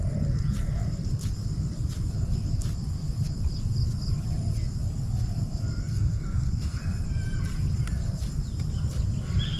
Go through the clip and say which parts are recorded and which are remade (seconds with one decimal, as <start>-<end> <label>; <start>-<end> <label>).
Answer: 0.0-5.8 recorded; 5.8-6.8 remade; 6.8-9.6 recorded